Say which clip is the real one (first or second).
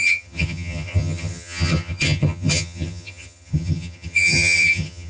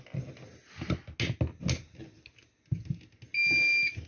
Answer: second